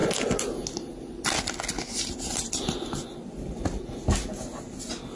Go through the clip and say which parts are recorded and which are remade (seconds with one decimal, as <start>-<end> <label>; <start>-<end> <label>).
0.0-5.1 recorded